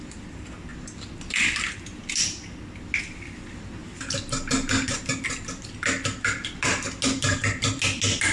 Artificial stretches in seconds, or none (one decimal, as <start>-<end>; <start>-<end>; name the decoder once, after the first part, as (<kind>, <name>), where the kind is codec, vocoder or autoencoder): none